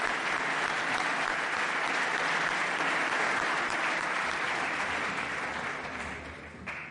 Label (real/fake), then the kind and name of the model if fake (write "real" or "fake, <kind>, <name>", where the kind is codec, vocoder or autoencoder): real